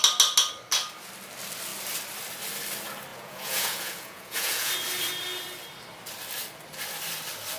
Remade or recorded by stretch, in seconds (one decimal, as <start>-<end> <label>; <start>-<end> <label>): 0.0-3.1 recorded; 3.1-4.7 remade; 4.7-7.6 recorded